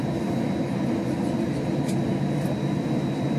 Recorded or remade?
recorded